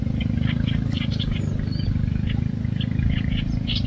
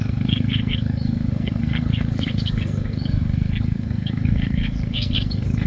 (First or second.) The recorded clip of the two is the first